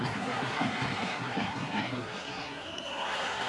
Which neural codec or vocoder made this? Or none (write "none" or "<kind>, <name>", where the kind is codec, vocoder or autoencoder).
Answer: codec, SNAC